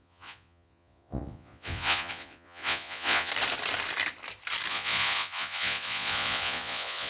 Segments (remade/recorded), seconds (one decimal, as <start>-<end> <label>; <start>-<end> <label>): 0.0-3.3 remade; 3.3-4.7 recorded; 4.7-7.1 remade